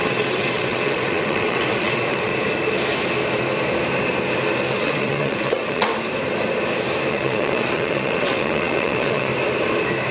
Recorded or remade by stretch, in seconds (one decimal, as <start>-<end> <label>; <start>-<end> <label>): 0.0-2.3 remade; 2.3-4.7 recorded; 4.7-5.9 remade; 5.9-7.1 recorded; 7.1-9.3 remade; 9.3-10.1 recorded